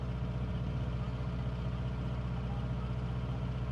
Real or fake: real